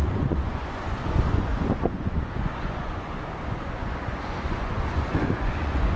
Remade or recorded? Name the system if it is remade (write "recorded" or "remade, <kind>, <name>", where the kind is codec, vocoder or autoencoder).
remade, vocoder, Vocos